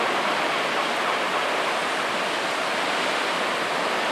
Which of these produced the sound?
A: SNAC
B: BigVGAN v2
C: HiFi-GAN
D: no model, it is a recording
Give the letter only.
D